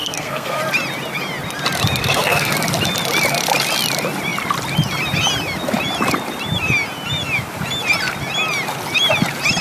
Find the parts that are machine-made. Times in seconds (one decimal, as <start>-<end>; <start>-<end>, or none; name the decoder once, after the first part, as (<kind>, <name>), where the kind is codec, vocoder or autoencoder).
0.0-0.6 (codec, SNAC); 2.0-2.5